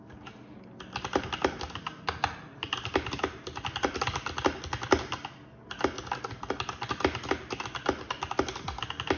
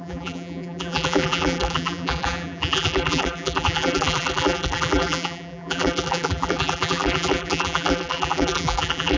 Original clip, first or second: first